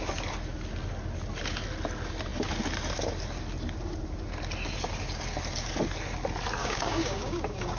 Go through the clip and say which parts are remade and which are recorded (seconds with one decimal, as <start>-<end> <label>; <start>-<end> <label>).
0.0-6.6 recorded; 6.6-7.8 remade